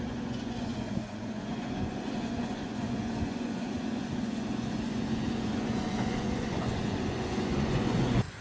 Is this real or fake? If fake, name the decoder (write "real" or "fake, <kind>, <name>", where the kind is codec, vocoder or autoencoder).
fake, vocoder, Vocos